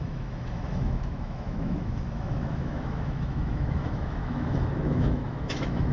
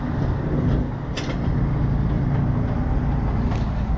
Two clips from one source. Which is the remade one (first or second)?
first